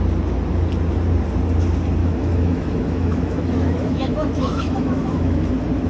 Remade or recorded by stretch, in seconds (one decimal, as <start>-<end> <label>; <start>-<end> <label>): 0.0-2.0 recorded; 2.0-5.5 remade; 5.5-5.9 recorded